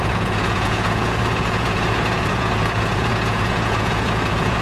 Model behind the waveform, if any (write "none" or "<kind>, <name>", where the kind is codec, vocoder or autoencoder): vocoder, Vocos